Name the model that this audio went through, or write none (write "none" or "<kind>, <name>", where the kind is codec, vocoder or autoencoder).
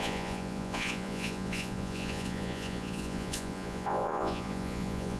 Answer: vocoder, Vocos